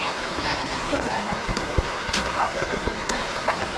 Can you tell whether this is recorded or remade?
remade